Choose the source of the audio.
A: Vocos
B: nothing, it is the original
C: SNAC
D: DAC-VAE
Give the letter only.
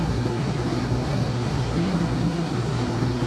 C